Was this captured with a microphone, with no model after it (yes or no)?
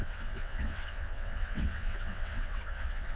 no